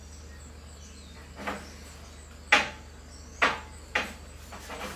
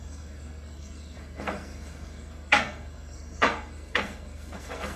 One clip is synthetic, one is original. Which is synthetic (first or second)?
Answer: second